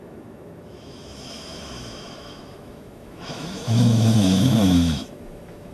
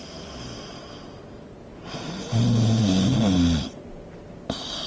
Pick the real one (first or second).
second